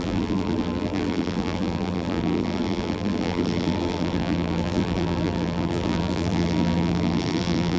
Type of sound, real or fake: fake